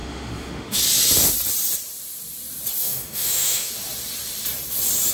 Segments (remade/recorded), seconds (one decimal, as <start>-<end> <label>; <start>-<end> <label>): 0.0-0.8 remade; 0.8-2.8 recorded; 2.8-3.7 remade; 3.7-5.1 recorded